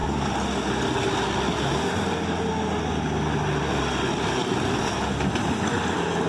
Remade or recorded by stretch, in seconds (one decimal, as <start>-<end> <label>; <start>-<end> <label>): 0.0-6.3 recorded